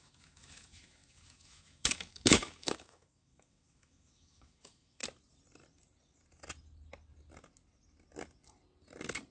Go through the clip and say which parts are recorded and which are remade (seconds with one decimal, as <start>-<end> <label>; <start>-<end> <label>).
0.0-5.0 remade; 5.0-9.3 recorded